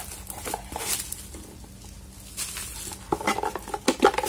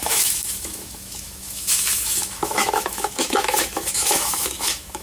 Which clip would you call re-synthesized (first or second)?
second